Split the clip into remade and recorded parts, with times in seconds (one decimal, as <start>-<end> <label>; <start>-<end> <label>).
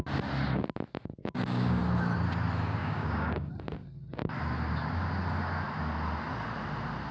0.0-1.2 recorded; 1.2-1.8 remade; 1.8-2.8 recorded; 2.8-3.5 remade; 3.5-7.1 recorded